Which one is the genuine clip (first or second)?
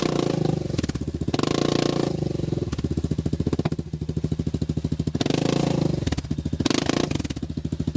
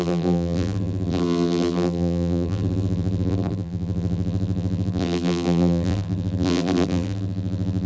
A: first